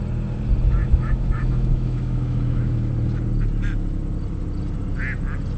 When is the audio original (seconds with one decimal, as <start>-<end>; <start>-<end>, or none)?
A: 0.0-0.8; 2.9-5.6